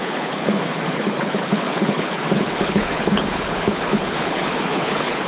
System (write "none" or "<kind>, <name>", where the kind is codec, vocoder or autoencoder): codec, HILCodec